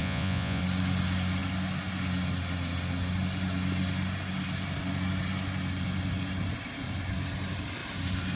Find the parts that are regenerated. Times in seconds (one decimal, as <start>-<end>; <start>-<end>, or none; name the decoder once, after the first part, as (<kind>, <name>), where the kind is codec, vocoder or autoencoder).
0.0-0.6 (vocoder, Vocos)